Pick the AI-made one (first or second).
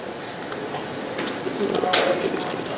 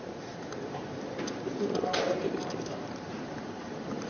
second